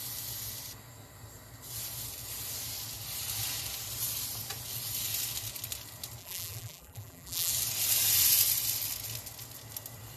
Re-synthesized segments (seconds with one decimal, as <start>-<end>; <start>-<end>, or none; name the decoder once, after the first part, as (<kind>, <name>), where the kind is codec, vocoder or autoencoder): 6.2-7.5 (vocoder, BigVGAN v2)